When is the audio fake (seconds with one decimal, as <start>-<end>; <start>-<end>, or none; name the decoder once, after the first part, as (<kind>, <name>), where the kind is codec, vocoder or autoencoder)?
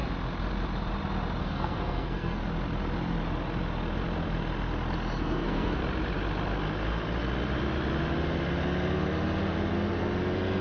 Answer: 1.4-2.4 (codec, SNAC); 5.2-5.8